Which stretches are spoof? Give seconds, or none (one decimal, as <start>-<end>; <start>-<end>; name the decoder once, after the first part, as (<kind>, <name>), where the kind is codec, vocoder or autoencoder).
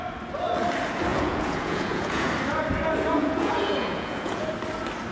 1.1-2.3 (vocoder, Vocos); 3.2-4.5